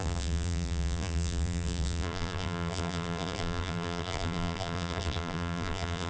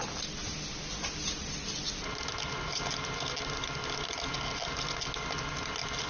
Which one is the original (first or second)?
second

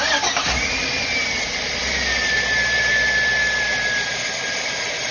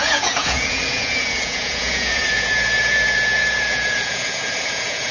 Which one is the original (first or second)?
first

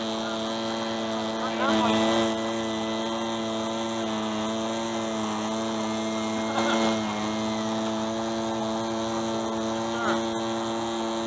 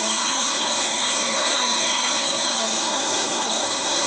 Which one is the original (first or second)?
first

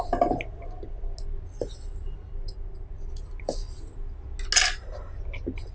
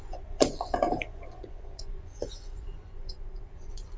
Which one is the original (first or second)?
first